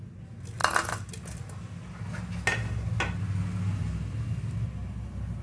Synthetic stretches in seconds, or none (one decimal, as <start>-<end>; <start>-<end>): none